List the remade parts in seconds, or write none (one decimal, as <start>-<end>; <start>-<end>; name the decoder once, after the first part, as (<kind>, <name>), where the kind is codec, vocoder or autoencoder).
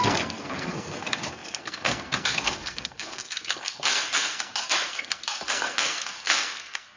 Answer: 0.0-7.0 (codec, SNAC)